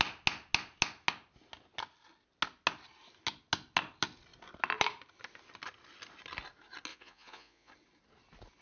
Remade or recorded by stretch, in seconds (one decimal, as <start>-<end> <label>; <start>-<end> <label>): 0.0-6.9 recorded; 6.9-7.7 remade; 7.7-8.6 recorded